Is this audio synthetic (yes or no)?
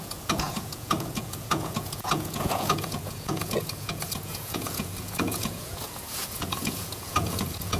yes